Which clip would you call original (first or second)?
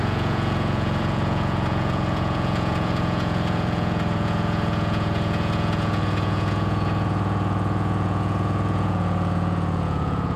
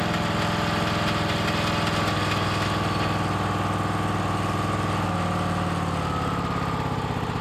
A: second